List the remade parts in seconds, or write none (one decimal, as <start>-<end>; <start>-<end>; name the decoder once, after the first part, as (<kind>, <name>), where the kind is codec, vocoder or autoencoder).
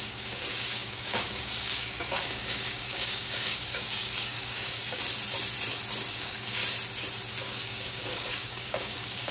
0.0-5.0 (codec, DAC); 6.1-6.6; 7.4-9.3